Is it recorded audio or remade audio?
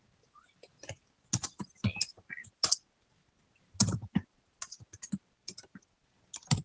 recorded